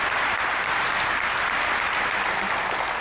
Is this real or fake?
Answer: real